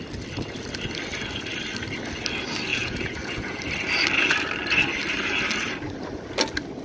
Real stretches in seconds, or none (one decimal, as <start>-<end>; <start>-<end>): 0.0-2.7; 3.6-6.8